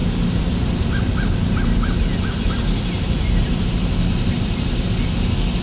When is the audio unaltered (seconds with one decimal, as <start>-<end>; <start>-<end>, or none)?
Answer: 0.0-5.6

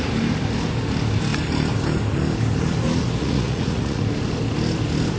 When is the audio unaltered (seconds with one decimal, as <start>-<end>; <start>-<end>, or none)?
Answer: 0.0-3.2; 4.0-5.2

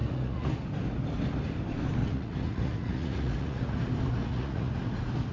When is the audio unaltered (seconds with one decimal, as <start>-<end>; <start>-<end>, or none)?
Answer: 0.5-2.0; 3.8-4.2; 4.7-5.3

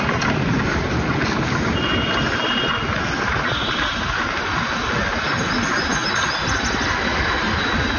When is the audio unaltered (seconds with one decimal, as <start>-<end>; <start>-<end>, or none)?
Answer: 0.0-8.0

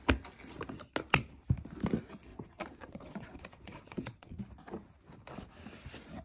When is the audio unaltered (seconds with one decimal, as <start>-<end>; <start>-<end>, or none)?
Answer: 0.0-2.3; 4.4-6.2